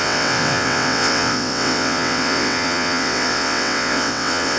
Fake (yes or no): yes